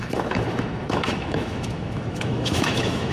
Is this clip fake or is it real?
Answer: fake